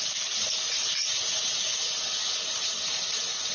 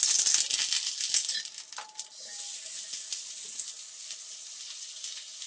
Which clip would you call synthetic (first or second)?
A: first